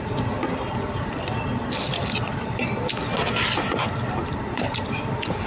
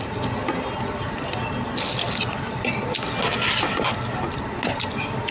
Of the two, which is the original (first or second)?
second